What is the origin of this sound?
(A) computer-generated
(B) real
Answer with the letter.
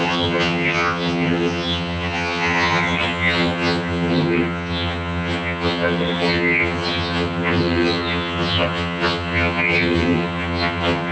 A